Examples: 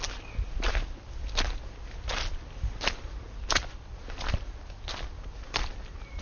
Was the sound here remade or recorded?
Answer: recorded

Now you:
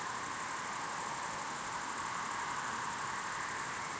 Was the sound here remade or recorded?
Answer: recorded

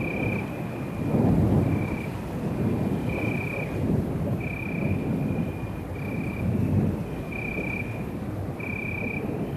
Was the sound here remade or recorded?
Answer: recorded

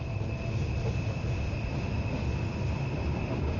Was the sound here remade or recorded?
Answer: recorded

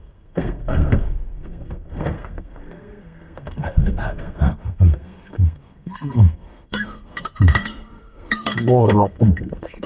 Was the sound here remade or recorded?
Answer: remade